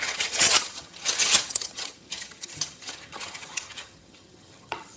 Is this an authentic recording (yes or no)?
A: no